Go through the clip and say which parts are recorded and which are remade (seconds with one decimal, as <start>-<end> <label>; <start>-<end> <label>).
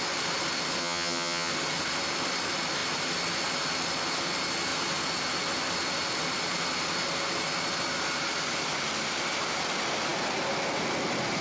0.0-0.8 recorded; 0.8-1.5 remade; 1.5-11.4 recorded